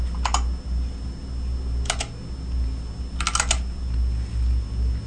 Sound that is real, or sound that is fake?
real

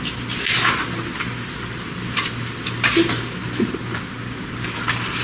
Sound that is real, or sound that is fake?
real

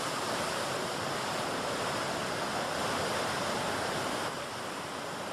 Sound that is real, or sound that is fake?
real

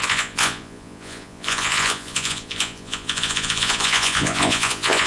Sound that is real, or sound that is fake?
fake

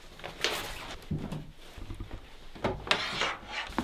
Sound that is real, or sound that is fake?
real